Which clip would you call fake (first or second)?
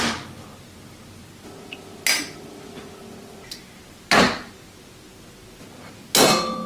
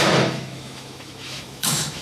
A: second